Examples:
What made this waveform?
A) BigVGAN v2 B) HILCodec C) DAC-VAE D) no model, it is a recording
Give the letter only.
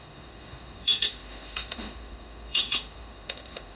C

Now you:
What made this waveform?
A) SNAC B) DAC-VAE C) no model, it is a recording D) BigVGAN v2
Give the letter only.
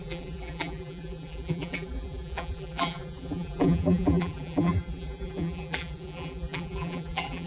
D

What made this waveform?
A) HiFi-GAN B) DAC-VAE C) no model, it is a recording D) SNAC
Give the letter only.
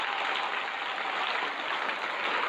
C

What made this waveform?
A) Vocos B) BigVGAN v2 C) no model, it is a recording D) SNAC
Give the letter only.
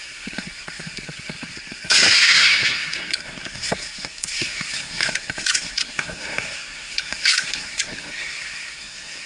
D